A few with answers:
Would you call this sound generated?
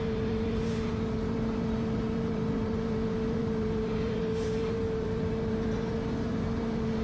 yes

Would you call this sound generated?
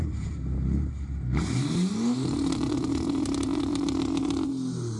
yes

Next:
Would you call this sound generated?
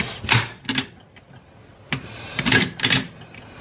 no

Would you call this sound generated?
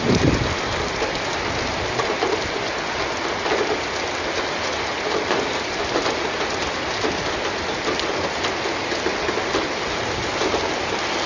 no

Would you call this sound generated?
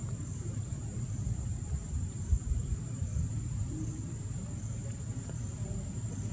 yes